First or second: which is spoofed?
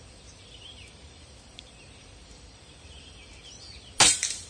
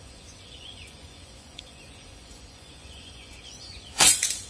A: second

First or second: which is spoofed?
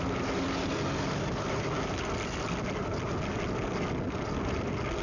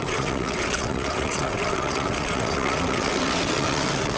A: second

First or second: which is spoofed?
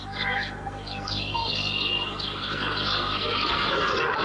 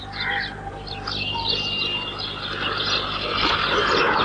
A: first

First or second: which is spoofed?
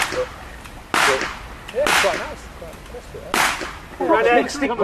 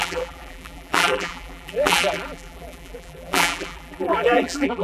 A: second